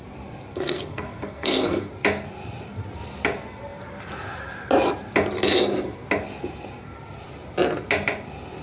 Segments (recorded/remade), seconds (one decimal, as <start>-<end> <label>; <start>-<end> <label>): 0.0-0.5 recorded; 0.5-1.9 remade; 1.9-8.6 recorded